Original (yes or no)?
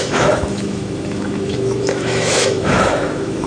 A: no